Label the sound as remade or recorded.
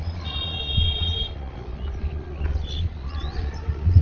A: remade